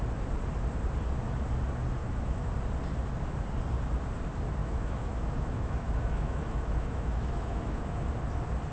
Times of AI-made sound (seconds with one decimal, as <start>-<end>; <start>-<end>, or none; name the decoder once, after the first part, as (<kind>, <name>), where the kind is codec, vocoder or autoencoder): 2.0-2.5 (autoencoder, DAC-VAE); 4.6-8.1